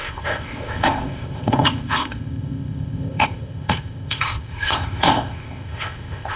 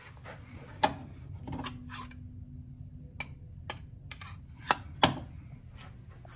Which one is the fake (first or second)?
first